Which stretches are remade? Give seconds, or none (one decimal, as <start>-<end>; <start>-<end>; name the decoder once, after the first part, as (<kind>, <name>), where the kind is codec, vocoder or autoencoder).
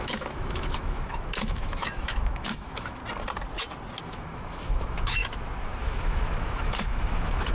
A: 0.0-3.0 (autoencoder, DAC-VAE); 4.0-7.5